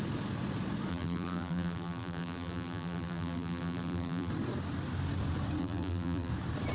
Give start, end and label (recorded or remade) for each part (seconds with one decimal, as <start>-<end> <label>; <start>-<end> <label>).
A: 0.0-0.9 recorded; 0.9-4.3 remade; 4.3-5.6 recorded; 5.6-6.3 remade; 6.3-6.7 recorded